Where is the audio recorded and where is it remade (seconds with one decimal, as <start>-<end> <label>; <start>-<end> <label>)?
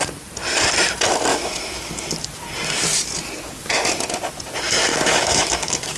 0.0-1.3 recorded; 1.3-1.9 remade; 1.9-4.9 recorded; 4.9-6.0 remade